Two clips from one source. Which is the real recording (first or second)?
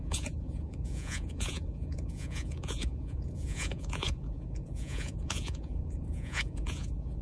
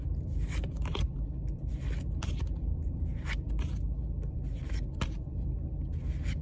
second